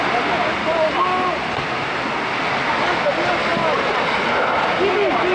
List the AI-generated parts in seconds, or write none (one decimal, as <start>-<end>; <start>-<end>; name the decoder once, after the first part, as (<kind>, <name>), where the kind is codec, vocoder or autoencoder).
none